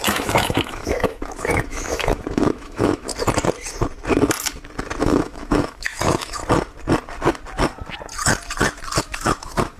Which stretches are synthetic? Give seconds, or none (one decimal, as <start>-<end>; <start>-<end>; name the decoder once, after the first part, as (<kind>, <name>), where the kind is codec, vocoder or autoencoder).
0.0-3.1 (autoencoder, DAC-VAE); 5.0-6.4; 9.0-9.8

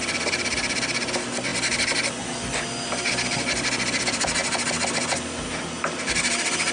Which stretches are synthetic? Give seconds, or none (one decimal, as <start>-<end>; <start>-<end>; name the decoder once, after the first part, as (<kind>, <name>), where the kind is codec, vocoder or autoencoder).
none

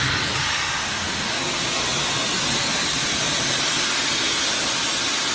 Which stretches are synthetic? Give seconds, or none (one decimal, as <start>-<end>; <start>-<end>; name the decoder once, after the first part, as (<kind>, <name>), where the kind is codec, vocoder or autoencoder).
0.8-1.4 (autoencoder, DAC-VAE)

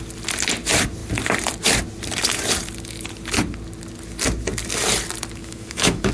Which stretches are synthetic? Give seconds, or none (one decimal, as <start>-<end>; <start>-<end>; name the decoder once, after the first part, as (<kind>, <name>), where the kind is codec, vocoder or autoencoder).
5.4-6.1 (autoencoder, DAC-VAE)

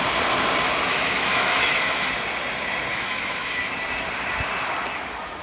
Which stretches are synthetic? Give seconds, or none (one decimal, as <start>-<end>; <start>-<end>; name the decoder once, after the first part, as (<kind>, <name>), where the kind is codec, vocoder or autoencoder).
0.9-2.1 (autoencoder, DAC-VAE); 2.9-3.7